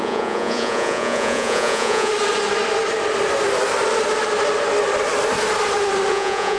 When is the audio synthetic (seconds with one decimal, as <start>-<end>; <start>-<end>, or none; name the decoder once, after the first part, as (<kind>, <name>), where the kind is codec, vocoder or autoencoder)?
0.0-2.1 (vocoder, Vocos); 6.1-6.6